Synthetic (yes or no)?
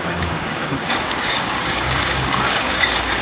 yes